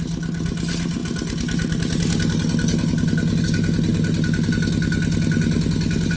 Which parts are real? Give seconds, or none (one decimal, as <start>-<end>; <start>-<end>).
0.0-6.2